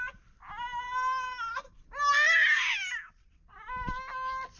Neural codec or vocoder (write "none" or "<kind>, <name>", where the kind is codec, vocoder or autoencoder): none